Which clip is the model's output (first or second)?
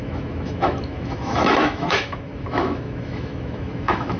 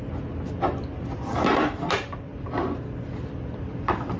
first